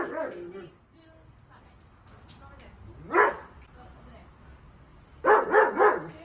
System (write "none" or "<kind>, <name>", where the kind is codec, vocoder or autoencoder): none